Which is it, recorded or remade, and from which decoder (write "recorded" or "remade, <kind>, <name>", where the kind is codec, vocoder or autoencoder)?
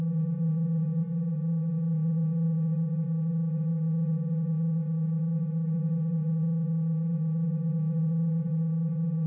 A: remade, vocoder, Vocos